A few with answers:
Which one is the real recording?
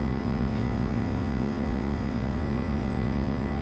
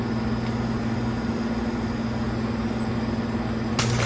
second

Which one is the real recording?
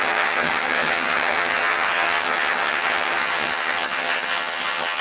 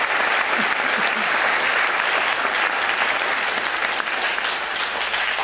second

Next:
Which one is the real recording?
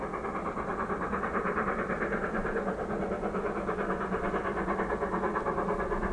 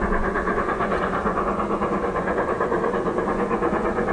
first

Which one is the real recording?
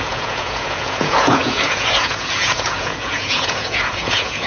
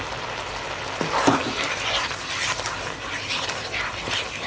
second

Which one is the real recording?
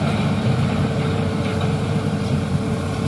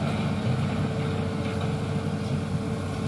second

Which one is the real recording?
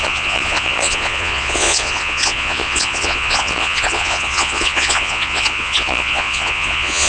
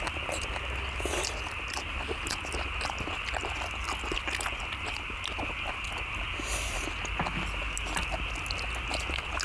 second